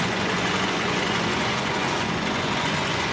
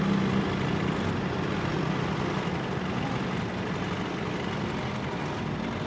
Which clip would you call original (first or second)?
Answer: second